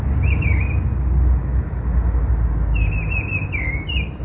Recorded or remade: recorded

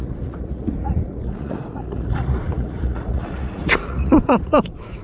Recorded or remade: remade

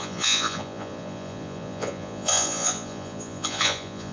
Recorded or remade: remade